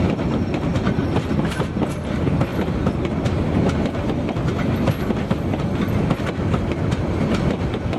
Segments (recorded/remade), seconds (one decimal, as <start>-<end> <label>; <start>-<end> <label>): 0.0-8.0 recorded